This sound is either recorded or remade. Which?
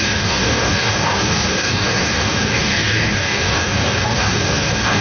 remade